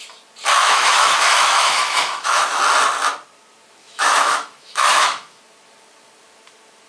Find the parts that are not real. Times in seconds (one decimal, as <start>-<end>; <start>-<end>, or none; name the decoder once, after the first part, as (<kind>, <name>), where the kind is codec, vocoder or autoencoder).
0.6-2.6 (autoencoder, DAC-VAE); 3.8-5.4